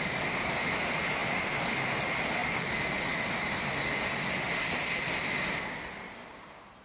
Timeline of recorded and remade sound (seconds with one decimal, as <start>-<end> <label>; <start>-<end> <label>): 0.0-6.8 recorded